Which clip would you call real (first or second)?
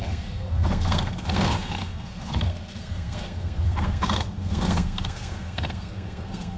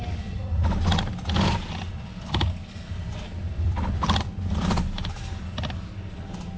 second